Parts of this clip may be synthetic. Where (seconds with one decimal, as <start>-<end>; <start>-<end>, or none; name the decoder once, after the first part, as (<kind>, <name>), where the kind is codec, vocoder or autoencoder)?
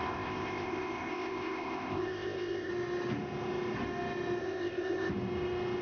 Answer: 0.0-2.7 (codec, ZipCodec); 4.4-5.1